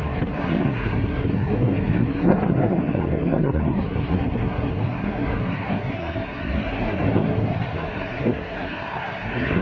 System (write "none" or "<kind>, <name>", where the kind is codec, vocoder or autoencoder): codec, SNAC